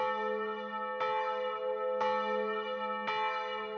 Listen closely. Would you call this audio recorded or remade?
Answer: recorded